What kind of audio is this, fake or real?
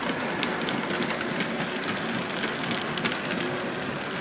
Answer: real